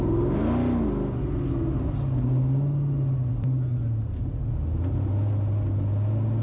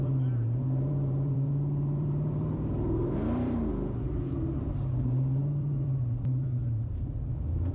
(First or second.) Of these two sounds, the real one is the first